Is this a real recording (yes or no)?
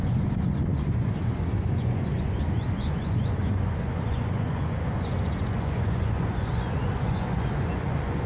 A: no